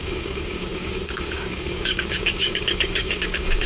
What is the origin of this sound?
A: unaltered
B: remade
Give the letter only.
B